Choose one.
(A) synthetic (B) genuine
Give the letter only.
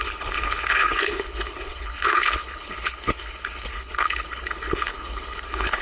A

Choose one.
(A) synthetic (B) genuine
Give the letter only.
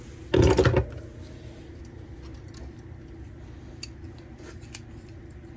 B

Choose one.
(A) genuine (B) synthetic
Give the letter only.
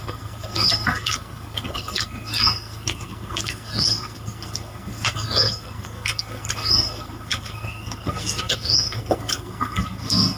B